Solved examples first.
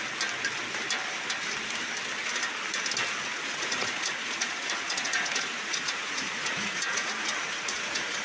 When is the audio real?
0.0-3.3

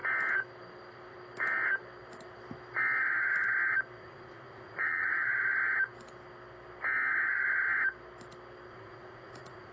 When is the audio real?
0.0-4.0; 5.3-8.7

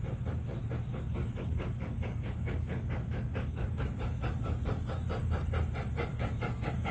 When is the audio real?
0.0-0.9; 5.0-6.1

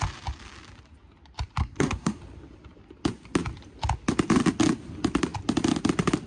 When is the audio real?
0.0-1.6; 2.2-6.3